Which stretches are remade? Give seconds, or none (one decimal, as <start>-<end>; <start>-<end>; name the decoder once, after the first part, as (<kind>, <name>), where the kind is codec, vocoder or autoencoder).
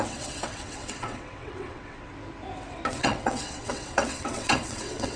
0.0-2.1 (vocoder, WaveNeXt); 2.9-5.2